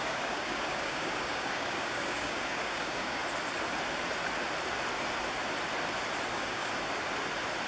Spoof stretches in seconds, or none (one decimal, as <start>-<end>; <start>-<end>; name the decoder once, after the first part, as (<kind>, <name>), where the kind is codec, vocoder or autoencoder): 0.0-3.2 (codec, DAC); 6.3-6.7